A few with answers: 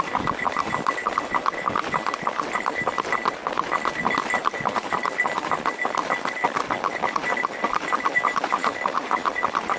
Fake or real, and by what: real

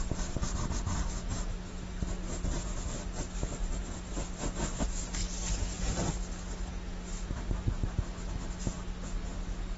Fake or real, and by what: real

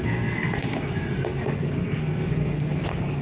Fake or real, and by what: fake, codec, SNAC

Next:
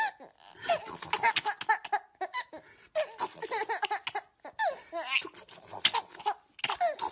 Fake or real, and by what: real